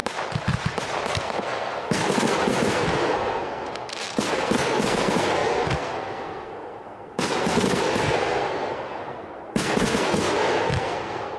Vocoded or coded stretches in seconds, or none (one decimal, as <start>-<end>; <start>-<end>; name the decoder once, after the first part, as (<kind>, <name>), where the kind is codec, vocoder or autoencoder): 1.1-11.4 (codec, SNAC)

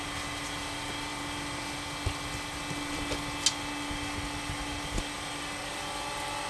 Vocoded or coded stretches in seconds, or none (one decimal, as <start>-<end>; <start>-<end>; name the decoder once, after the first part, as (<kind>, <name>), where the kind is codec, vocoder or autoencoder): none